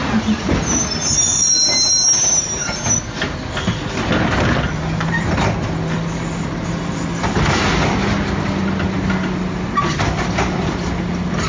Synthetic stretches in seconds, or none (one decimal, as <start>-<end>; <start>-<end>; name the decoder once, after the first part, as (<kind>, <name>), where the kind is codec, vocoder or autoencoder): none